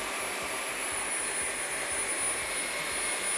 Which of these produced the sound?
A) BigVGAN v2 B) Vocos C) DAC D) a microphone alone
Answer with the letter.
D